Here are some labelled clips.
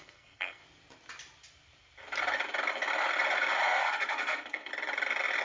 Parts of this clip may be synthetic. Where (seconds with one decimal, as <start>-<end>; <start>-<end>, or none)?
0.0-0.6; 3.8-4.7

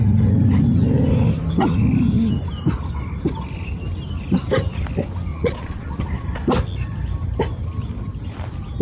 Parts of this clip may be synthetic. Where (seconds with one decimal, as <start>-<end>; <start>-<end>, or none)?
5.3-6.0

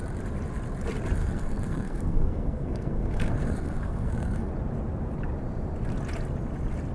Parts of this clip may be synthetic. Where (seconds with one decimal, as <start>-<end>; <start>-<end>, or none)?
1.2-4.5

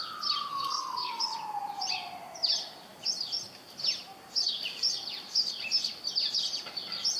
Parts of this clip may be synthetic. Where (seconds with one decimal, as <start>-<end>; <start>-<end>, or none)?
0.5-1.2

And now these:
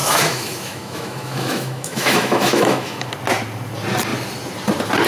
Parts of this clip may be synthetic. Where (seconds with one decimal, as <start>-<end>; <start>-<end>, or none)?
0.0-3.1

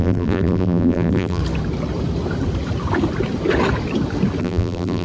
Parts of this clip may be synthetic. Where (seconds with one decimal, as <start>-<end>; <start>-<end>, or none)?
0.0-1.4; 4.4-5.0